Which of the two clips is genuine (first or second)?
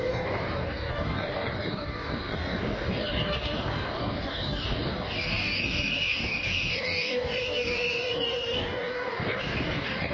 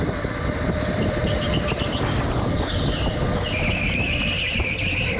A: second